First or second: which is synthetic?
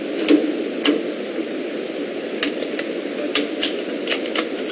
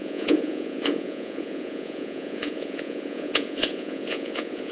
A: second